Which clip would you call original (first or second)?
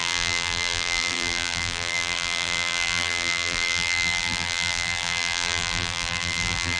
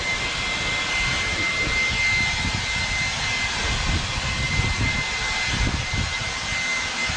second